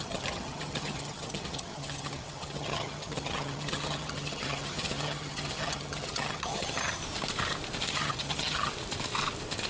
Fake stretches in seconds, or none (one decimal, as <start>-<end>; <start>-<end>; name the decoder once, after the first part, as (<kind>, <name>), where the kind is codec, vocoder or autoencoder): 0.0-7.0 (vocoder, HiFi-GAN); 7.9-8.7